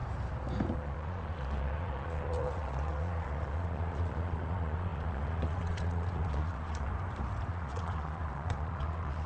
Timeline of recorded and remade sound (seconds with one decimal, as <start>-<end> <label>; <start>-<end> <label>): 0.0-0.7 recorded; 0.7-6.9 remade; 6.9-7.5 recorded; 7.5-9.3 remade